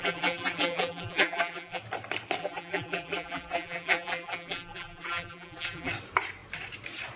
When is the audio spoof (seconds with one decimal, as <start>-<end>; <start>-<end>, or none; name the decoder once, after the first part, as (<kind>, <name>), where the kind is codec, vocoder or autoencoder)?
0.0-1.8 (vocoder, BigVGAN v2); 2.4-5.9